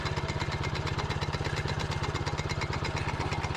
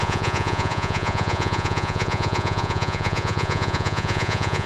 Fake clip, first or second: second